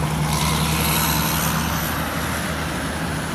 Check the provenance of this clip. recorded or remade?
recorded